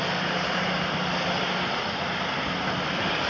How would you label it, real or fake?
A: fake